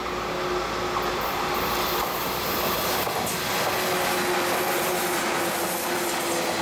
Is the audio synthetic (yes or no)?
no